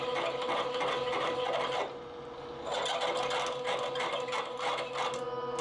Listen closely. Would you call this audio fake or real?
real